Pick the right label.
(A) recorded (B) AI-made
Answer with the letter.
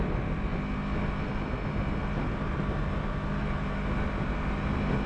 A